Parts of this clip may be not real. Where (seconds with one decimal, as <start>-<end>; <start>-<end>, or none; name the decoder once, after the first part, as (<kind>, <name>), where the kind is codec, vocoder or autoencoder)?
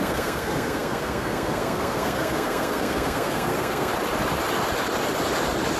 0.0-3.9 (codec, SNAC)